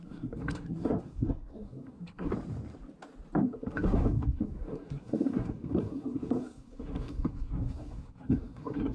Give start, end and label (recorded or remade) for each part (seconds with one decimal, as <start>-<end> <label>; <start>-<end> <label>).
0.0-2.3 remade; 2.3-3.4 recorded; 3.4-8.9 remade